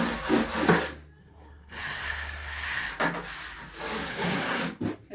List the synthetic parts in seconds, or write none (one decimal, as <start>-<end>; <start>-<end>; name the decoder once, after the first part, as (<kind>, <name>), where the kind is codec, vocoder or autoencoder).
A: 1.2-2.9 (codec, SNAC); 4.1-4.6